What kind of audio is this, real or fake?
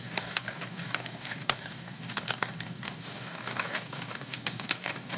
fake